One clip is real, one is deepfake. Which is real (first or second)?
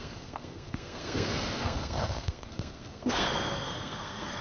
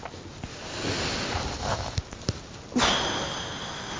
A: second